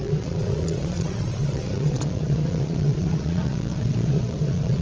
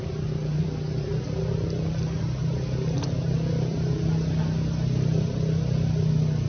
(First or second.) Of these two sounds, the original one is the second